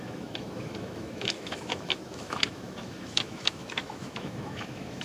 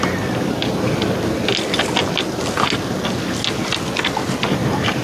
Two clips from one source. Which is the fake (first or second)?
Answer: first